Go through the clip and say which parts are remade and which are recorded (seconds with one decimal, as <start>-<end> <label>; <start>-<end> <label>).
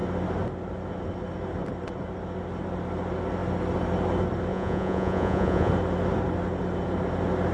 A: 0.0-4.5 recorded; 4.5-5.7 remade; 5.7-7.5 recorded